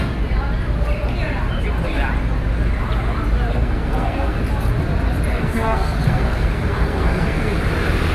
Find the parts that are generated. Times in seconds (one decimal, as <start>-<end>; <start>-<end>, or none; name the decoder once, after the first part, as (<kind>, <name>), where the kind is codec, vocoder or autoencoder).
3.5-4.4 (codec, SNAC); 5.3-7.6